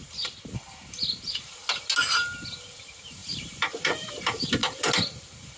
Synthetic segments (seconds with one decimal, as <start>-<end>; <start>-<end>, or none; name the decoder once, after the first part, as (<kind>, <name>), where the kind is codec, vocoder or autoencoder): 1.1-1.6 (vocoder, BigVGAN v2); 2.8-5.6